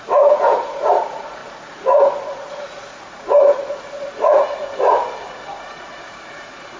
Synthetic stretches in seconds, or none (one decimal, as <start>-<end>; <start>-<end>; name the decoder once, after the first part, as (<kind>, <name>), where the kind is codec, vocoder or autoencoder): 0.0-6.8 (vocoder, Vocos)